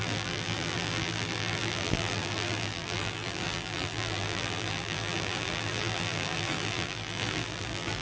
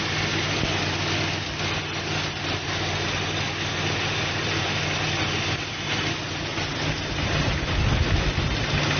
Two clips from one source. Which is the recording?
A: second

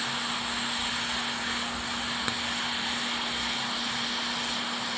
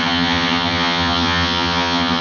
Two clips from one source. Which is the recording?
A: first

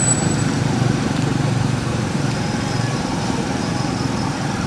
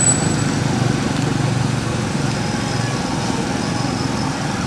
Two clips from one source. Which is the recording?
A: second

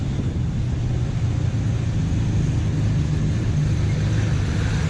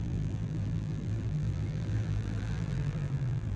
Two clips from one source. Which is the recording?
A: first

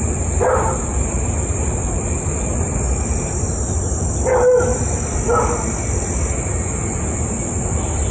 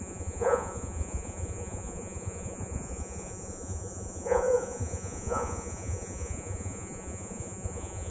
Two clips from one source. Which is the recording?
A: first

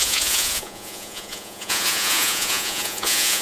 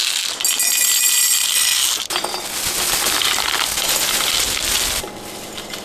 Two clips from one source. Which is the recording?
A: second